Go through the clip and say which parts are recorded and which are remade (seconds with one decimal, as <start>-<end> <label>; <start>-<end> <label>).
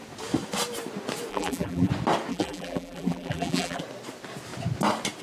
0.0-1.3 recorded; 1.3-1.9 remade; 1.9-2.3 recorded; 2.3-3.8 remade; 3.8-5.2 recorded